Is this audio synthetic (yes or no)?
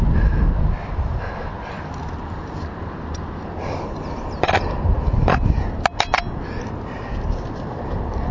no